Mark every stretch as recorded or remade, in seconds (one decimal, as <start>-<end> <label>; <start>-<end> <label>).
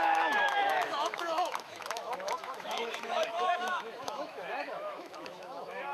0.0-5.9 remade